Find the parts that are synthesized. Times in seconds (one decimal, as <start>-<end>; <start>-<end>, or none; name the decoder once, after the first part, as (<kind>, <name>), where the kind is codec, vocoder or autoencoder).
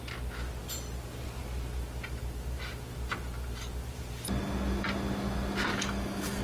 5.7-6.4 (autoencoder, DAC-VAE)